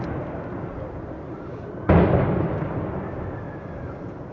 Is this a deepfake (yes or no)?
no